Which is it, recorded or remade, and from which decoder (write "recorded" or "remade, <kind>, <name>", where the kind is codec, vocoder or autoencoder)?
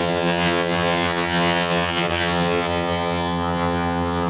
remade, vocoder, HiFi-GAN